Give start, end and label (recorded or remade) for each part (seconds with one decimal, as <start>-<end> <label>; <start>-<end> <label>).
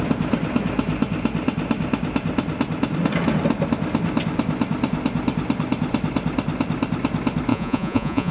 0.0-7.5 recorded; 7.5-8.3 remade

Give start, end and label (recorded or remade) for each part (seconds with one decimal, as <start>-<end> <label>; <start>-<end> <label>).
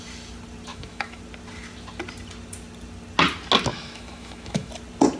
0.0-0.7 recorded; 0.7-1.2 remade; 1.2-3.7 recorded; 3.7-4.7 remade; 4.7-5.2 recorded